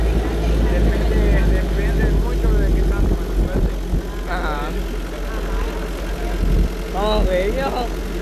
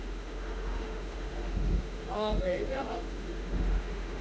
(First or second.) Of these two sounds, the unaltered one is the first